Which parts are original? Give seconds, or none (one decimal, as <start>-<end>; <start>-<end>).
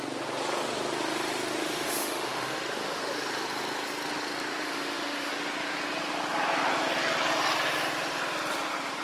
0.0-1.6; 3.0-4.6; 5.3-9.0